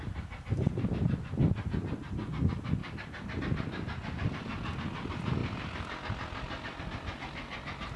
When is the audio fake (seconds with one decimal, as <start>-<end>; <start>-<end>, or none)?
none